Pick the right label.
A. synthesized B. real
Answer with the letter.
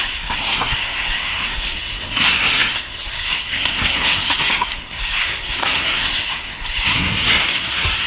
A